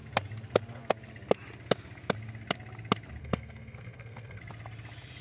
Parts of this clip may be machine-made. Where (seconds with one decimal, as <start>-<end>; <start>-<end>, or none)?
3.2-4.4

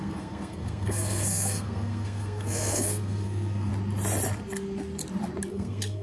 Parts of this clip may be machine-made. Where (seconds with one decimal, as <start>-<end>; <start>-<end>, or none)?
0.0-3.7; 5.5-6.0